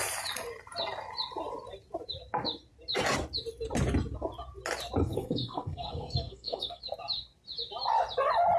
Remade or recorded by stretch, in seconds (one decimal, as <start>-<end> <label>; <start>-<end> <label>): 0.0-5.0 recorded; 5.0-6.8 remade; 6.8-8.6 recorded